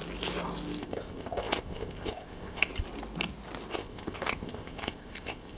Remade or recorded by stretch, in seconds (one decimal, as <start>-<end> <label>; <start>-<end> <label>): 0.0-0.8 recorded; 0.8-2.7 remade; 2.7-3.7 recorded; 3.7-5.6 remade